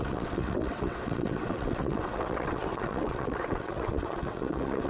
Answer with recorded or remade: remade